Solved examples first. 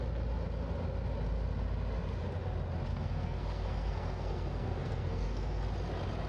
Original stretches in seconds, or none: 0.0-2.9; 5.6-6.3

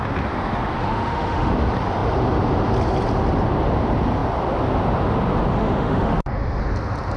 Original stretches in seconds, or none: 0.0-0.8; 1.5-5.5; 6.6-7.2